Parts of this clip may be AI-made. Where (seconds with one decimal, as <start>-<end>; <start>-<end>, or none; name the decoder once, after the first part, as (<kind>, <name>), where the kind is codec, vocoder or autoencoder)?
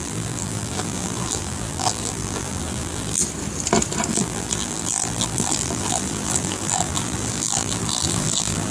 0.0-3.2 (vocoder, BigVGAN v2); 4.1-8.7